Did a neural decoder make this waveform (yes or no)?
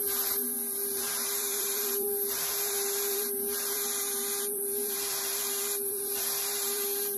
yes